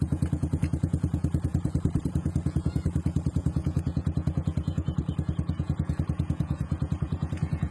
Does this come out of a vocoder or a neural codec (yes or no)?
yes